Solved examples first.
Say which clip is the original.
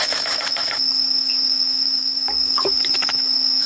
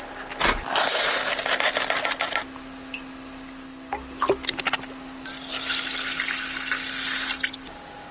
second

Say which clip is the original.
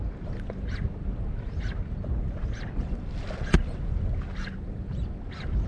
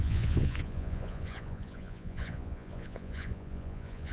first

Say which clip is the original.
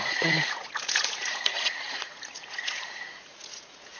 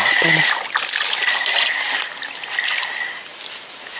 second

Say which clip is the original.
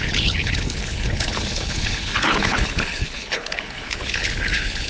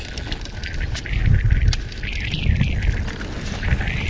second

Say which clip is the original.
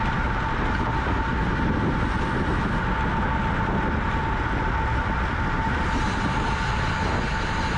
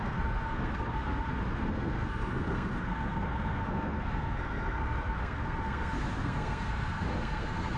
first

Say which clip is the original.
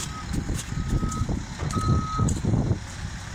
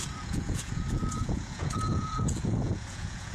first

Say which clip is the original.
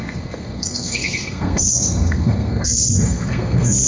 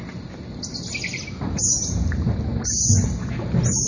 second